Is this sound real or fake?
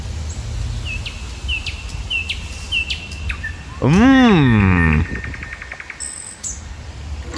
real